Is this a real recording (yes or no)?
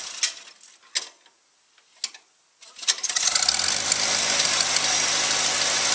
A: yes